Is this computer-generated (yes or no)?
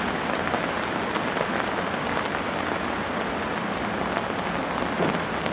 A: no